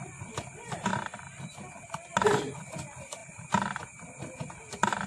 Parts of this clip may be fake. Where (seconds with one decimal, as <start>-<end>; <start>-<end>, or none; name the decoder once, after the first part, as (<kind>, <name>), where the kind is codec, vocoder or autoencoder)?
none